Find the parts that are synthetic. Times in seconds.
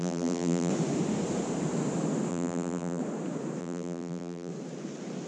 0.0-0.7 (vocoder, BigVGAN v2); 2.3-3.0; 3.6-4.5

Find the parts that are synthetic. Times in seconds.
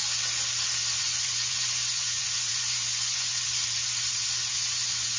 1.0-3.6 (vocoder, Vocos); 4.5-5.2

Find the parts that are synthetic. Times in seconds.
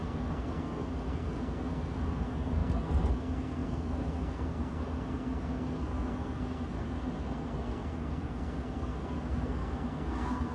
0.0-10.5 (codec, SNAC)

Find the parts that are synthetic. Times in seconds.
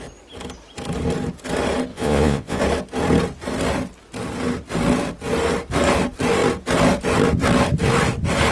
1.9-2.6 (vocoder, Vocos)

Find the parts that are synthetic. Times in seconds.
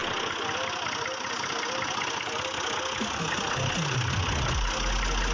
none